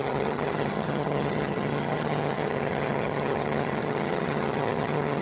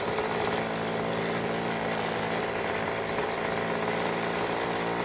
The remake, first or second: first